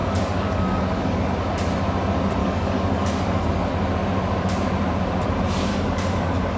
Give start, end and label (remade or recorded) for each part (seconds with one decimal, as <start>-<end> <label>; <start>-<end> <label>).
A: 0.0-1.3 remade; 1.3-2.4 recorded; 2.4-3.7 remade; 3.7-5.7 recorded; 5.7-6.6 remade